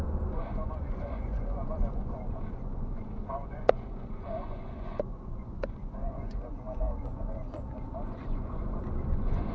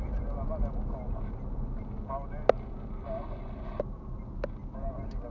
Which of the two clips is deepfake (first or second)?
first